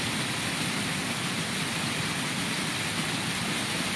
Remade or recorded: recorded